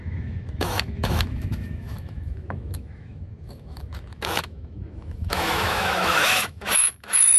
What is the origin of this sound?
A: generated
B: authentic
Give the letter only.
A